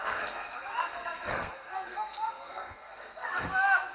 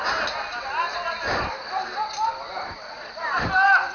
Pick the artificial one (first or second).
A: first